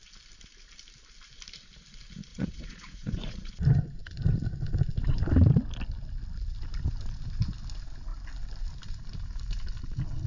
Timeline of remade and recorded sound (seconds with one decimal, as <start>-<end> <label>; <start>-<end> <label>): 0.0-2.3 recorded; 2.3-3.5 remade; 3.5-10.3 recorded